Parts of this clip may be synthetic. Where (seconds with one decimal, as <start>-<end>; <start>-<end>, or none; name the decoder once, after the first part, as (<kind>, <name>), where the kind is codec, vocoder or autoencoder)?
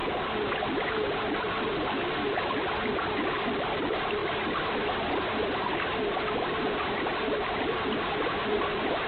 0.0-2.0 (vocoder, BigVGAN v2); 4.2-7.7